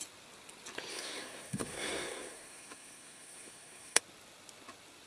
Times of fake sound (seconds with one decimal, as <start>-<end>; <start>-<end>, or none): 0.9-4.0

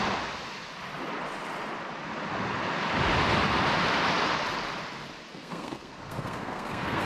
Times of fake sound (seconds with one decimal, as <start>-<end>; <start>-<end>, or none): 5.3-7.1

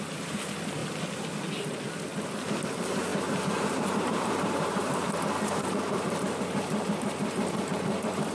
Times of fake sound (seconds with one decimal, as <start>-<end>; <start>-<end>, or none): 0.0-0.8; 2.6-8.3

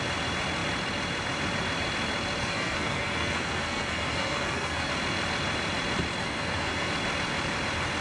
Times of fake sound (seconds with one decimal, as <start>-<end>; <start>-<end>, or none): 2.4-4.9; 6.2-6.9